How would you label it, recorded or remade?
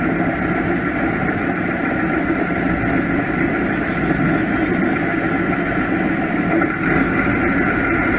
recorded